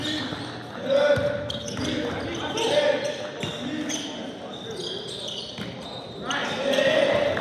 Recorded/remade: recorded